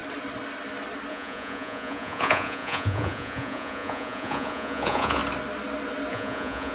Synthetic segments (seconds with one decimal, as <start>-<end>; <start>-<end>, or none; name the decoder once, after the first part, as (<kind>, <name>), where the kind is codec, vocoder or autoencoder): 1.1-5.2 (vocoder, Vocos); 6.1-6.7